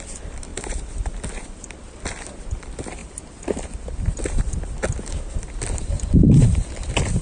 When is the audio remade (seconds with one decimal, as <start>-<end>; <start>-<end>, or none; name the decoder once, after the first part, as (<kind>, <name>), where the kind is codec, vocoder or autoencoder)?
0.0-4.9 (vocoder, BigVGAN v2); 5.4-7.2